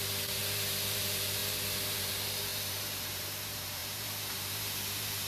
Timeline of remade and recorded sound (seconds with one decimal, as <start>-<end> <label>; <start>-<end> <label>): 0.0-5.3 remade